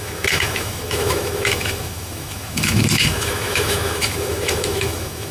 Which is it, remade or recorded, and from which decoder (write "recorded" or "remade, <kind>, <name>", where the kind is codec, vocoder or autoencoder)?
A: remade, autoencoder, DAC-VAE